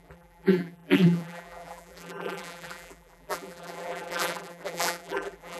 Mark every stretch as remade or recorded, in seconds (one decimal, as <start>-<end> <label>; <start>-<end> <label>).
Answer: 0.0-5.6 remade

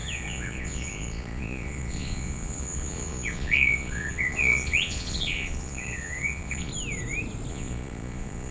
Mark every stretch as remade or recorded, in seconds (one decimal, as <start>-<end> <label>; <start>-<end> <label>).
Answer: 0.0-6.7 remade; 6.7-7.5 recorded; 7.5-8.5 remade

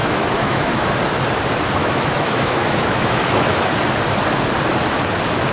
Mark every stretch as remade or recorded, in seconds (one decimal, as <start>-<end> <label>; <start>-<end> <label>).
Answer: 0.0-0.9 remade; 0.9-1.8 recorded; 1.8-3.7 remade; 3.7-5.5 recorded